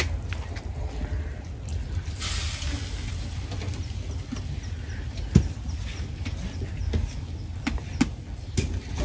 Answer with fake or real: real